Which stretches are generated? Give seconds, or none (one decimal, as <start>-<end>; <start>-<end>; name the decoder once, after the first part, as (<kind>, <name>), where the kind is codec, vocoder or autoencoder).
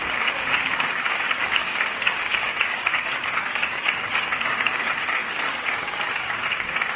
0.0-7.0 (codec, DAC)